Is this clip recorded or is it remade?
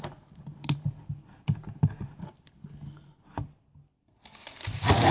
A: recorded